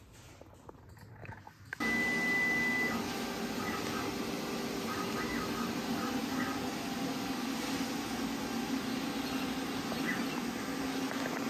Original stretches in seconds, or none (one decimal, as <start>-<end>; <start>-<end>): 0.0-1.2; 1.8-11.5